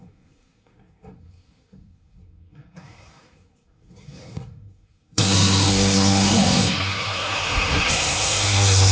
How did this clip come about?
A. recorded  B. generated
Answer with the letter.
B